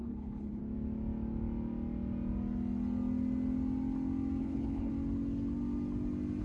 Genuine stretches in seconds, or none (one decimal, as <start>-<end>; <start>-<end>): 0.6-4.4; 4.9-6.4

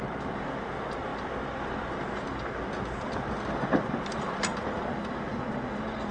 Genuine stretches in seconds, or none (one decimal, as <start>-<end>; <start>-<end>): 0.0-6.1

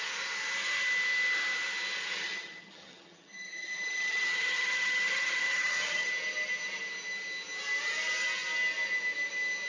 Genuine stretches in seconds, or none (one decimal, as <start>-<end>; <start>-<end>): 0.0-2.1; 6.1-9.7

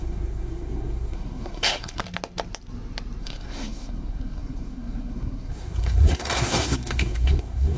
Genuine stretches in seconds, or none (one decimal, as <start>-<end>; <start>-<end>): 2.0-3.2

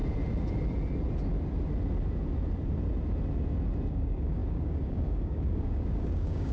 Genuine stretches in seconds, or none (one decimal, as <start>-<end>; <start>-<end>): 0.0-3.9

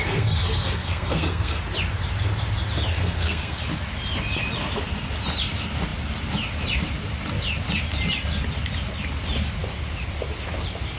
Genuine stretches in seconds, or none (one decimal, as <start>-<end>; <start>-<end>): 1.6-2.9; 3.6-11.0

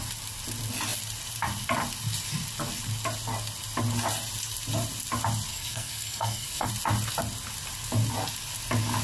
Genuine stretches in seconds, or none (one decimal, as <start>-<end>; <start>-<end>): 0.0-5.5; 6.7-9.0